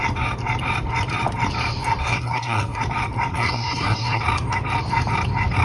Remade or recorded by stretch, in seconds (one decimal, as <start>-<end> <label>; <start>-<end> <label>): 0.0-2.0 recorded; 2.0-2.8 remade; 2.8-3.3 recorded; 3.3-4.2 remade; 4.2-5.6 recorded